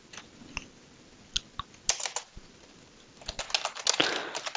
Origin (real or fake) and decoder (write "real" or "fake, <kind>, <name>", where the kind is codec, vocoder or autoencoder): real